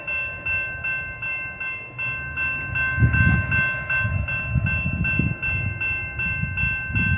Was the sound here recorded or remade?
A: recorded